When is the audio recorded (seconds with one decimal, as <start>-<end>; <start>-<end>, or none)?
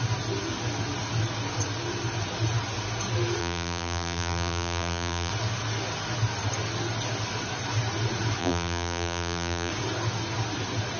0.0-3.4; 5.3-8.4; 9.7-11.0